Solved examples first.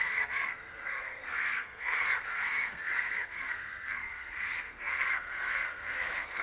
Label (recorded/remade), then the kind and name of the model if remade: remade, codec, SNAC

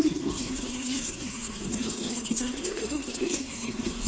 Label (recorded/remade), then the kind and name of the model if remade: remade, codec, SNAC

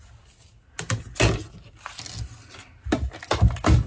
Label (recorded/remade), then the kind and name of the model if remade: recorded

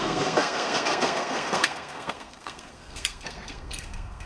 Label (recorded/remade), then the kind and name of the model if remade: remade, codec, SNAC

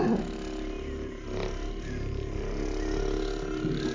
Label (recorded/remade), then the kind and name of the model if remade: recorded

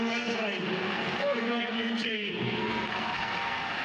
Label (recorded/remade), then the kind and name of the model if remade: remade, codec, SNAC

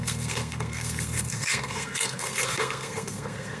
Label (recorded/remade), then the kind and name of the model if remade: remade, codec, SNAC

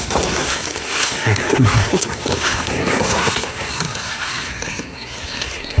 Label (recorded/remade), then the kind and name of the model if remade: remade, codec, SNAC